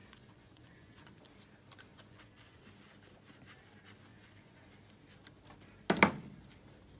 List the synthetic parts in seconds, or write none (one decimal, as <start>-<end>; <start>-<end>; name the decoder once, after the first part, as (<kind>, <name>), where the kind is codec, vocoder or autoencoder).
0.0-1.2 (vocoder, Vocos); 1.9-2.6; 4.1-4.7